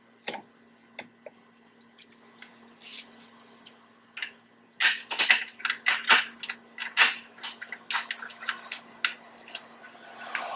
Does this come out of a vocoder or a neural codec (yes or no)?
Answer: no